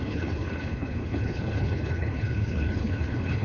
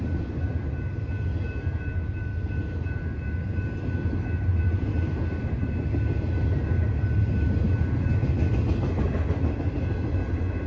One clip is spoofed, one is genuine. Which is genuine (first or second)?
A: second